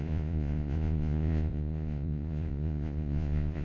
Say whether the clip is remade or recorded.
remade